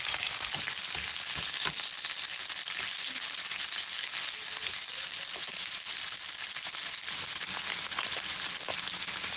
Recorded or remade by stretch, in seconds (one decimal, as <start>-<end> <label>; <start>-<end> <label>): 0.0-9.4 recorded